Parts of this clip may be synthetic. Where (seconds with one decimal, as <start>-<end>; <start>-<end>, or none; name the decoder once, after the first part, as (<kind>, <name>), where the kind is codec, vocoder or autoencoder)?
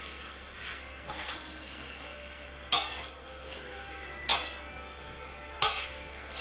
0.0-6.4 (codec, SNAC)